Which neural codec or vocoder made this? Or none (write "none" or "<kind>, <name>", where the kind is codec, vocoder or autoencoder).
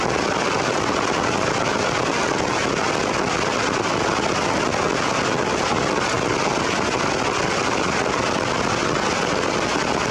none